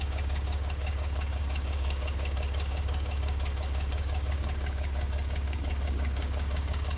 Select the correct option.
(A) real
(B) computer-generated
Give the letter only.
B